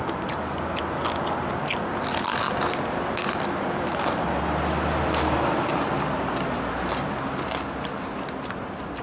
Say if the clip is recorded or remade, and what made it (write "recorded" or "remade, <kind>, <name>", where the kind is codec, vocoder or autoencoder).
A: recorded